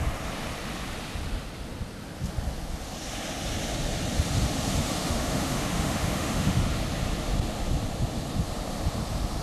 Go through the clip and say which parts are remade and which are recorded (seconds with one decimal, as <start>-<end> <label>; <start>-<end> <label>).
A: 0.0-4.8 recorded; 4.8-6.7 remade; 6.7-9.4 recorded